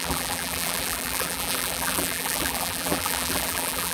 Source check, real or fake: fake